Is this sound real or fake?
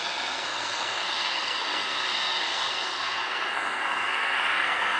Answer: fake